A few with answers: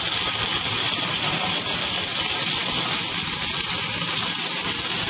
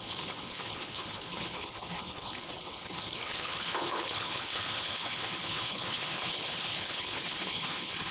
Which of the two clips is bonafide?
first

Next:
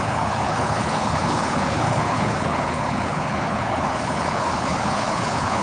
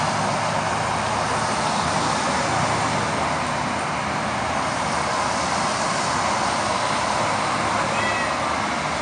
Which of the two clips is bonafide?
second